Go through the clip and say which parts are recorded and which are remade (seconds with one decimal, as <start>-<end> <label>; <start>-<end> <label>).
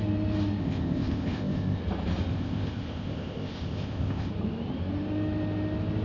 0.0-0.6 recorded; 0.6-1.8 remade; 1.8-2.3 recorded; 2.3-4.3 remade; 4.3-6.0 recorded